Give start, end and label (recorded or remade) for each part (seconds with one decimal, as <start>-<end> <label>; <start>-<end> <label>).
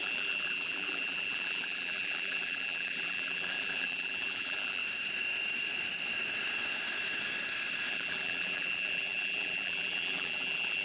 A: 0.0-4.8 remade; 4.8-7.9 recorded; 7.9-10.8 remade